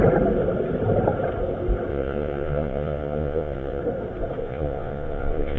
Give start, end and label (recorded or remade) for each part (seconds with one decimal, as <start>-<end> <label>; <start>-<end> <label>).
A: 0.0-1.9 recorded; 1.9-3.8 remade; 3.8-4.4 recorded; 4.4-5.6 remade